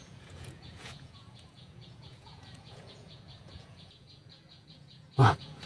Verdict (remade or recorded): remade